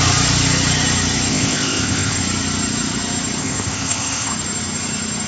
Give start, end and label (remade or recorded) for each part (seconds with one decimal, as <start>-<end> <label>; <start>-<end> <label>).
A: 0.0-1.3 recorded; 1.3-2.2 remade; 2.2-3.4 recorded; 3.4-4.3 remade; 4.3-5.3 recorded